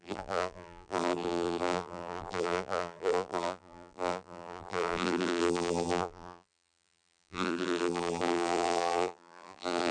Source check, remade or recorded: remade